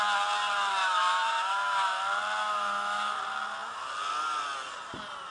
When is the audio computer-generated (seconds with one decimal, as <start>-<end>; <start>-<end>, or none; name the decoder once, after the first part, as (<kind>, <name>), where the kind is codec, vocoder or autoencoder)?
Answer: 0.8-2.0 (autoencoder, DAC-VAE); 2.4-3.2